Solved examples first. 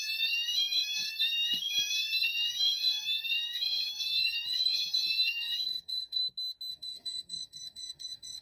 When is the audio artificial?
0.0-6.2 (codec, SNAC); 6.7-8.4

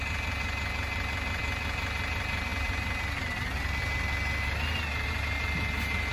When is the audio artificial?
none

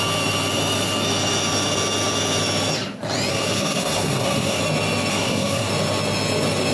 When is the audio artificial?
3.3-4.6 (codec, SNAC); 5.1-5.7

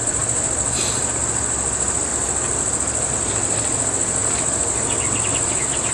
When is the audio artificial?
none

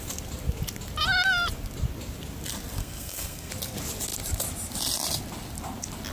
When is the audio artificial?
2.8-3.5 (codec, SNAC)

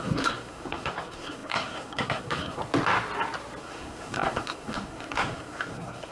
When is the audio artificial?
0.0-2.6 (codec, SNAC); 3.6-6.1

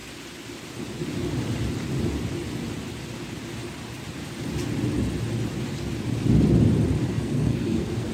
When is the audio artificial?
7.1-8.1 (codec, SNAC)

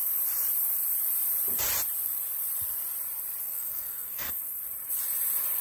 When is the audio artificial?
3.4-4.6 (codec, SNAC)